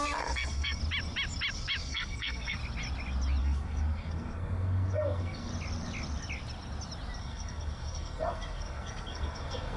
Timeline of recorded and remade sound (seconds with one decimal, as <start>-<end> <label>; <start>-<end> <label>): 0.0-0.8 remade; 0.8-1.8 recorded; 1.8-2.6 remade; 2.6-3.4 recorded; 3.4-5.5 remade; 5.5-7.2 recorded; 7.2-9.8 remade